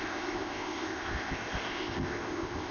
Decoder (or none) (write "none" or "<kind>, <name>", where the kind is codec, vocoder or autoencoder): codec, ZipCodec